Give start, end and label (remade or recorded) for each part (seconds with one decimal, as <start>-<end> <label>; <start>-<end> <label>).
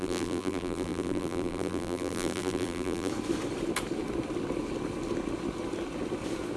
0.0-3.1 remade; 3.1-6.6 recorded